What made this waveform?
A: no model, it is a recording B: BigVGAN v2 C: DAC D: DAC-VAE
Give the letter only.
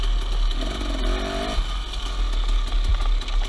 A